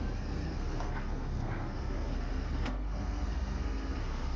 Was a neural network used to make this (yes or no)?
yes